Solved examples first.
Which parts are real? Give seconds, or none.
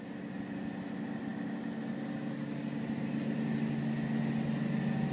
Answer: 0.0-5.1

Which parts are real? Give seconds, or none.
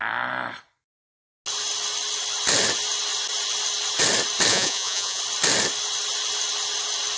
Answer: 0.0-4.5; 5.2-7.2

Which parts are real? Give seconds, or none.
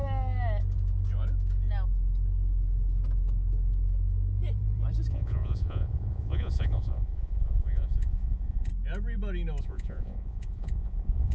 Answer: 0.0-5.1; 8.7-9.6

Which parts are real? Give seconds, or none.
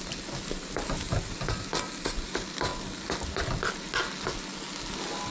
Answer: 0.0-5.3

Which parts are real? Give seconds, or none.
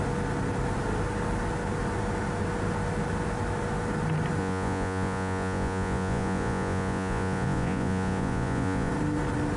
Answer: 0.0-4.4; 8.9-9.6